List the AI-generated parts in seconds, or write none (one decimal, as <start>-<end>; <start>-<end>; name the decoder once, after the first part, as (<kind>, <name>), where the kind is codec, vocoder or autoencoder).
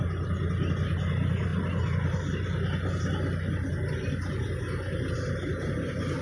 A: none